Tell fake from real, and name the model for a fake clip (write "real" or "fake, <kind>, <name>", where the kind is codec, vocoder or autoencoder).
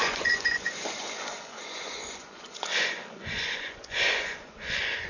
fake, vocoder, Vocos